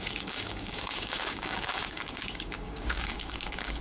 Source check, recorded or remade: remade